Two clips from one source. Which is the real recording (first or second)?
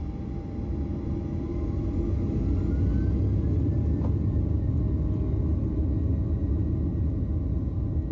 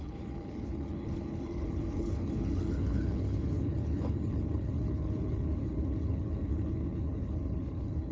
first